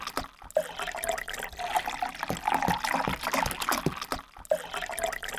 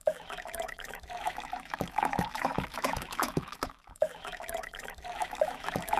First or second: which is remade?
second